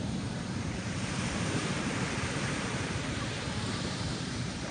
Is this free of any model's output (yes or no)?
no